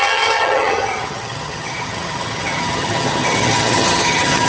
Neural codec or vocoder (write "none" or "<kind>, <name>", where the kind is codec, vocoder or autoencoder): vocoder, HiFi-GAN